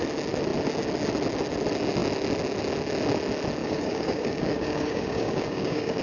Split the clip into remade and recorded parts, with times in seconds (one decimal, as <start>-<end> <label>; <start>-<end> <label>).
0.0-3.6 recorded; 3.6-6.0 remade